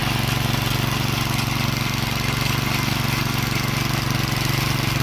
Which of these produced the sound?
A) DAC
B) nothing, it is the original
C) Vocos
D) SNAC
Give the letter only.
B